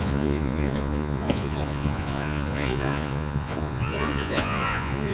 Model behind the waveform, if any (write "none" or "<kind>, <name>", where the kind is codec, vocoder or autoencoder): vocoder, Vocos